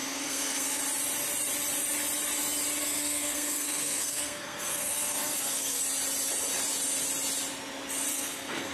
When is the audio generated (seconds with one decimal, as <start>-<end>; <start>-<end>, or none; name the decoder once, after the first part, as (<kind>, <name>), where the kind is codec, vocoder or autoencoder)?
0.0-0.8 (codec, SNAC); 2.8-5.8; 8.1-8.7